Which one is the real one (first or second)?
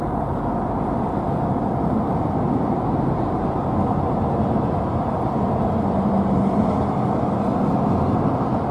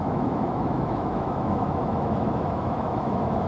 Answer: first